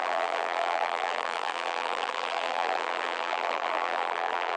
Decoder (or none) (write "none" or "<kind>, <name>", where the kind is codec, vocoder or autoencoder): vocoder, BigVGAN v2